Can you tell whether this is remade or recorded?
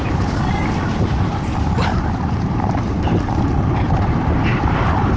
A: remade